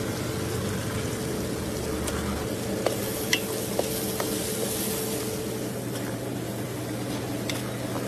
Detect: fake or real real